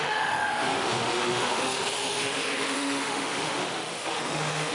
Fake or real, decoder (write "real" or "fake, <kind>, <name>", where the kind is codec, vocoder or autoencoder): fake, autoencoder, DAC-VAE